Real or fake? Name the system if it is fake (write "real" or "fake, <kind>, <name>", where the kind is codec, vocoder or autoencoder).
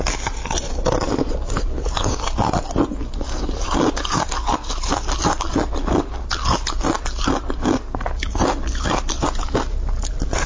real